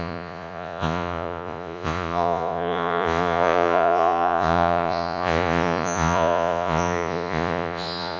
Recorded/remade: remade